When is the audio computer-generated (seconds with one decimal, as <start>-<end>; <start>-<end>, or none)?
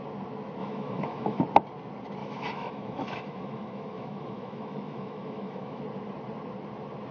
0.6-1.4; 2.2-5.8